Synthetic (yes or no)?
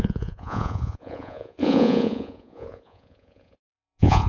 yes